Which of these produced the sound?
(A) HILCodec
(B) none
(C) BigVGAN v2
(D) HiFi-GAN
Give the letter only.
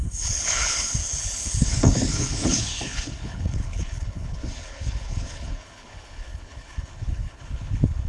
A